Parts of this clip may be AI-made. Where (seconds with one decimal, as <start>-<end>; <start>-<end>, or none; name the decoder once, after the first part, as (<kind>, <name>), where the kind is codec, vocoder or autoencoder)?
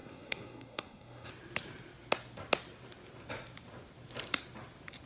0.0-1.3 (codec, SNAC)